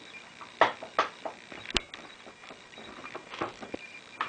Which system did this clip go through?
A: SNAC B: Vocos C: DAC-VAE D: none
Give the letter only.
D